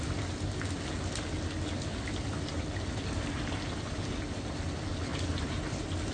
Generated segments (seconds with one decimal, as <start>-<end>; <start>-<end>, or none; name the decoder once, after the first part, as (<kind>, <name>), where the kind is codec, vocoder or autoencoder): none